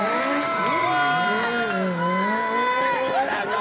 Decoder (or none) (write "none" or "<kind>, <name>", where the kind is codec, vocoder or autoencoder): none